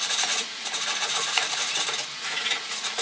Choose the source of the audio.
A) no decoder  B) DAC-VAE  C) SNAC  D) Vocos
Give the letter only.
D